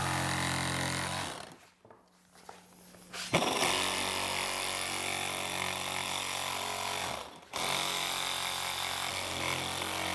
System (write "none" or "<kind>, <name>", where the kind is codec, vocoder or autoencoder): none